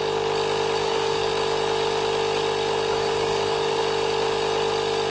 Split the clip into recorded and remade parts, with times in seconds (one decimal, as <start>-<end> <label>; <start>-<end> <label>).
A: 0.0-0.8 recorded; 0.8-1.3 remade; 1.3-2.9 recorded; 2.9-3.8 remade; 3.8-5.1 recorded